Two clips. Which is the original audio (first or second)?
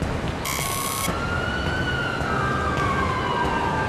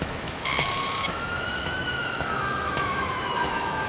first